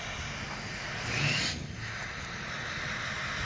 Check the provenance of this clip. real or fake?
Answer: real